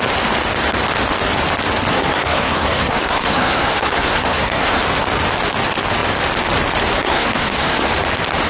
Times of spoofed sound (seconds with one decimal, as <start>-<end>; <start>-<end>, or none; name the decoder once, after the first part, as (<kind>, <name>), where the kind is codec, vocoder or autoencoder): 1.9-4.8 (codec, SNAC); 7.0-7.9